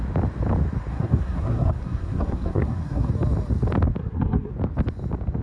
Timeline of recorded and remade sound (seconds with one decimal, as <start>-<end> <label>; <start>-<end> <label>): 0.0-0.9 recorded; 0.9-3.1 remade; 3.1-4.0 recorded; 4.0-4.5 remade; 4.5-5.4 recorded